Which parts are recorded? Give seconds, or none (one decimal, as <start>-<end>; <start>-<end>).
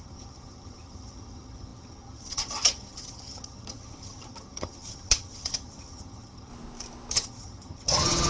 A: 6.5-7.1